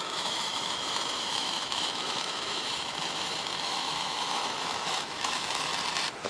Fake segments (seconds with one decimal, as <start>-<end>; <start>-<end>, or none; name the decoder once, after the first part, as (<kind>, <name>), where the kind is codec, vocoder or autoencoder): 0.0-5.7 (autoencoder, DAC-VAE)